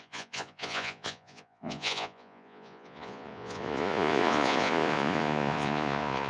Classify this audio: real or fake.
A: fake